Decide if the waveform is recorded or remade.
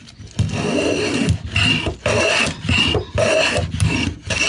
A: recorded